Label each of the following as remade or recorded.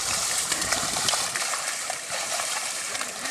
remade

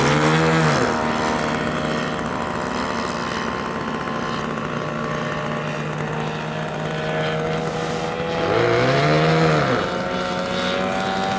recorded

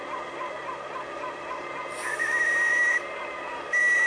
remade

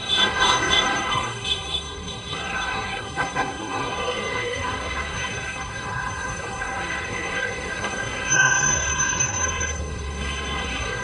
remade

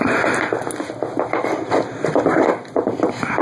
recorded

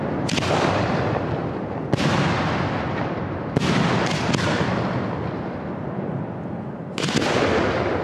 recorded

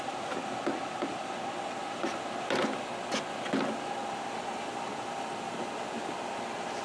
recorded